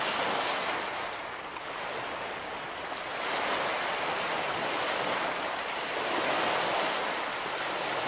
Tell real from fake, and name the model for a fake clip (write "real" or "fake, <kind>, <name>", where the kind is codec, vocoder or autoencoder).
real